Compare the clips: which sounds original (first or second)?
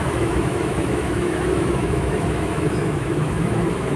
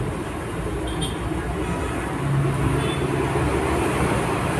second